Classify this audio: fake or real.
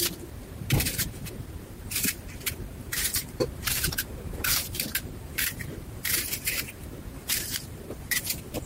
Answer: fake